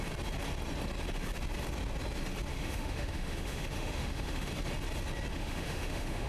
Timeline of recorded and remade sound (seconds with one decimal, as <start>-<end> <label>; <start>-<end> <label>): 0.0-2.5 recorded; 2.5-4.5 remade; 4.5-5.3 recorded; 5.3-6.3 remade